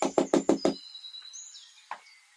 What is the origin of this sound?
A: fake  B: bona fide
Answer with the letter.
B